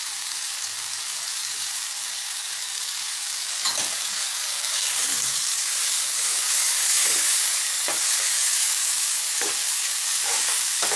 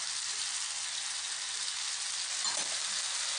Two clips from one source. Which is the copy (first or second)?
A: first